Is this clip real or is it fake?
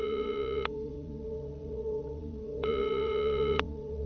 fake